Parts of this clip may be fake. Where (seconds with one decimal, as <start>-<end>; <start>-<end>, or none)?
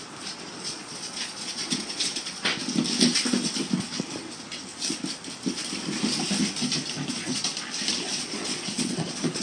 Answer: 0.6-2.5; 7.1-7.5; 8.0-9.4